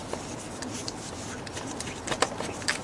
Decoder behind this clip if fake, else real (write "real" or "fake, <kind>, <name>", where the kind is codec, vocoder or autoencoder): real